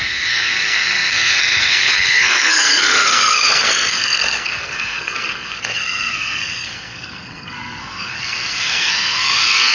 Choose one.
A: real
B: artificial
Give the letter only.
B